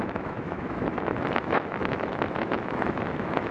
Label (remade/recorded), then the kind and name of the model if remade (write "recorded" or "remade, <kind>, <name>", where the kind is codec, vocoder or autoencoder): remade, autoencoder, DAC-VAE